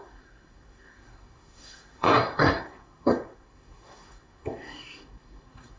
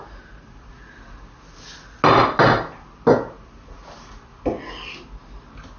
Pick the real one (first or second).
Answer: second